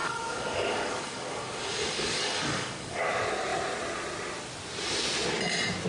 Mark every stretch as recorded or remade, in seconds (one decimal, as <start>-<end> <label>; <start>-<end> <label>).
0.0-3.0 remade; 3.0-5.9 recorded